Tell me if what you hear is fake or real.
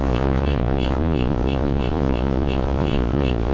fake